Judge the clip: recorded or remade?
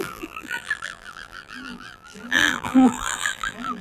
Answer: remade